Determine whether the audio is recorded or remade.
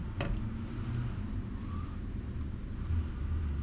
recorded